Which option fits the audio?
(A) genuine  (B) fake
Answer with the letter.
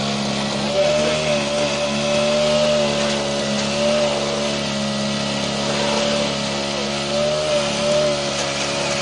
A